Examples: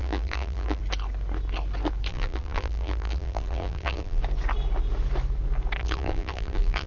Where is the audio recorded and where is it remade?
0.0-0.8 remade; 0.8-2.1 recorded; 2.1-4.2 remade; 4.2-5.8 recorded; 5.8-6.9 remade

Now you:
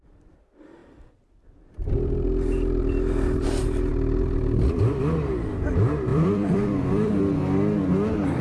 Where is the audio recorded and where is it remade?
0.0-3.9 recorded; 3.9-4.8 remade; 4.8-6.1 recorded; 6.1-7.1 remade; 7.1-8.4 recorded

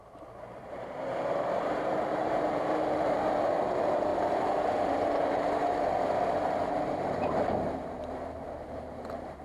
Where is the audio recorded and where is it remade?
0.0-4.1 remade; 4.1-6.8 recorded; 6.8-9.4 remade

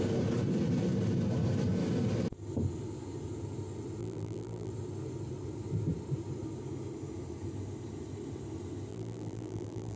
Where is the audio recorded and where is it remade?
0.0-4.0 recorded; 4.0-4.7 remade; 4.7-8.9 recorded; 8.9-10.0 remade

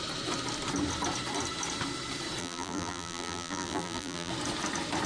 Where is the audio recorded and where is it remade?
0.0-2.4 recorded; 2.4-4.3 remade; 4.3-5.1 recorded

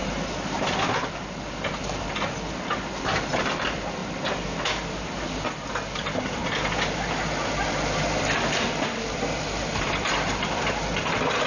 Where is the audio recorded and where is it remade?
0.0-0.9 recorded; 0.9-4.0 remade; 4.0-5.7 recorded; 5.7-6.4 remade; 6.4-8.2 recorded; 8.2-11.5 remade

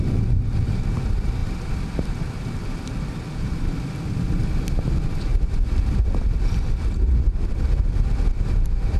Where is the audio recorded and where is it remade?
0.0-1.4 recorded; 1.4-2.1 remade; 2.1-5.3 recorded; 5.3-7.5 remade; 7.5-9.0 recorded

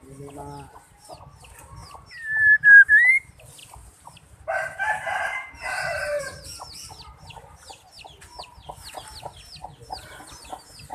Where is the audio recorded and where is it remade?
0.0-3.6 recorded; 3.6-6.2 remade; 6.2-10.9 recorded